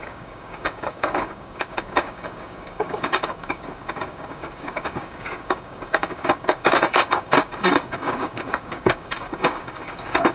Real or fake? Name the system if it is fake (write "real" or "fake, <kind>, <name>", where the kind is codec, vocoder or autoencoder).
fake, codec, DAC